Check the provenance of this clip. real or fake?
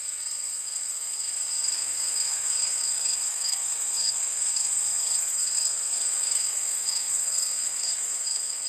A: fake